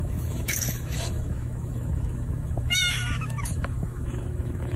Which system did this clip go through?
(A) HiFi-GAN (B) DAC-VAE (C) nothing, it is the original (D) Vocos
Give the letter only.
B